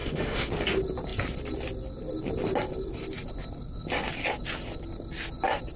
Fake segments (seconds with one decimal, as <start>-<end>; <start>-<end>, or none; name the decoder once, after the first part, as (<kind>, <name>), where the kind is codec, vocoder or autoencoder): 0.0-0.5 (autoencoder, DAC-VAE)